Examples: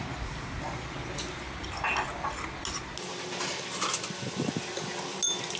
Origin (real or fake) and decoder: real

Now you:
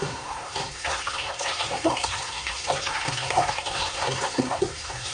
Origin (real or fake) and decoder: fake, codec, SNAC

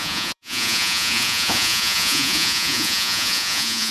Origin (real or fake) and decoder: fake, vocoder, Vocos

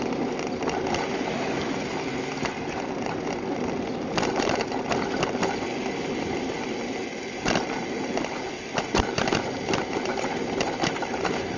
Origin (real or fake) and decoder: real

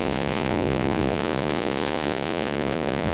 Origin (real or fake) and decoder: fake, vocoder, Vocos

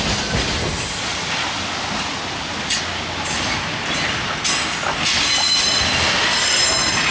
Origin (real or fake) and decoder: real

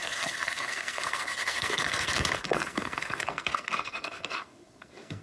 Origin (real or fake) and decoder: fake, codec, SNAC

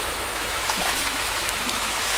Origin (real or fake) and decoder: fake, autoencoder, DAC-VAE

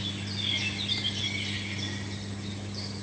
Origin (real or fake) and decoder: real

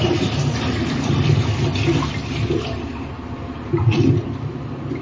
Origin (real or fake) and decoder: fake, vocoder, BigVGAN v2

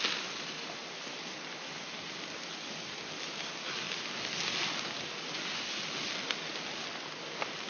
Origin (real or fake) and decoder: real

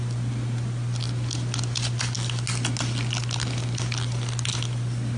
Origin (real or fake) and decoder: real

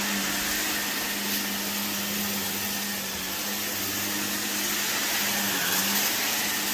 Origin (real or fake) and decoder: real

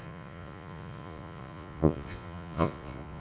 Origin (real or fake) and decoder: fake, vocoder, Vocos